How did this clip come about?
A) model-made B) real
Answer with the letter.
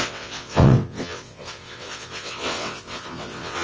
A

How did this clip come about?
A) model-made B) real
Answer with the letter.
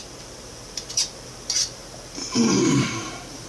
A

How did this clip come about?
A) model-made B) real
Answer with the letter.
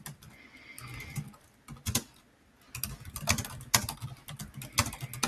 B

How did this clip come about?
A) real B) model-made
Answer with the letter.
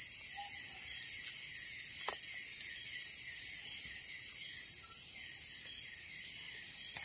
A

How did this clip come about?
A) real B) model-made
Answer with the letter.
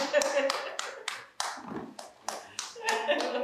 A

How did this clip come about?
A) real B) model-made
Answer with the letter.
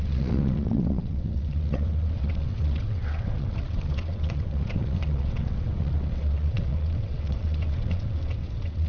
B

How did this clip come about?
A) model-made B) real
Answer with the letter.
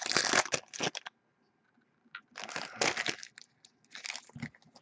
B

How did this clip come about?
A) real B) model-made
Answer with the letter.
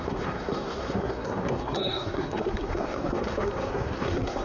B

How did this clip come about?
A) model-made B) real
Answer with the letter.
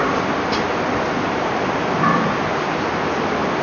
B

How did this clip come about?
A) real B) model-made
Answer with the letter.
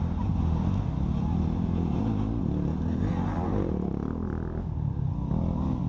A